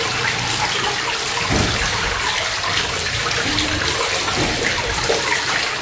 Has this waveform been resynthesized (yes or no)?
yes